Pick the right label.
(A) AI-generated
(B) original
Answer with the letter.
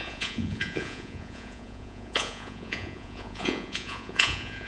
A